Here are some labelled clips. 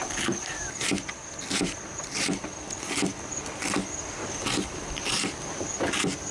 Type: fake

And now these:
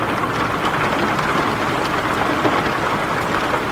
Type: real